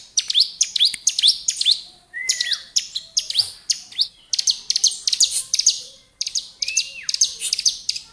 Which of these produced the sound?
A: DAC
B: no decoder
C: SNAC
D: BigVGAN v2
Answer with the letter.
D